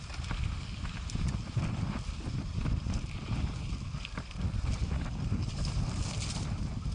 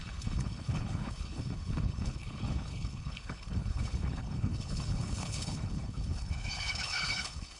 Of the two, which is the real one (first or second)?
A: first